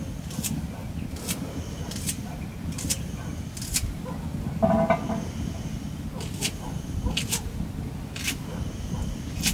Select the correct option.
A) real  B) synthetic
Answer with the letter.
A